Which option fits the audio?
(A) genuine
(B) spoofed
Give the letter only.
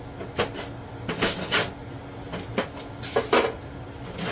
A